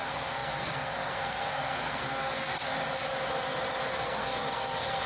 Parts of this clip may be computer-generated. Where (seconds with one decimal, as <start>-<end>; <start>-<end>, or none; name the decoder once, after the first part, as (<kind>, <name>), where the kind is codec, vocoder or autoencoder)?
0.0-2.5 (codec, SNAC); 3.9-5.1